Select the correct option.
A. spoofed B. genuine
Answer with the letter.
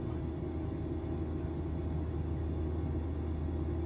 B